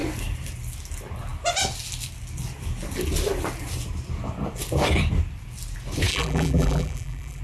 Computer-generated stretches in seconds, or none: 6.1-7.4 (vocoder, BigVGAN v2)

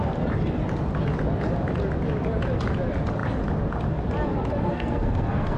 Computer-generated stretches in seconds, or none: 4.7-5.6 (codec, SNAC)

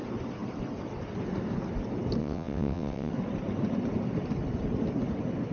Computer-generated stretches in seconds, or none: 2.2-3.1 (vocoder, WaveNeXt)

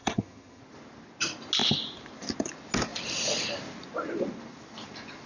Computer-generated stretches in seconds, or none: 0.0-0.6 (vocoder, HiFi-GAN)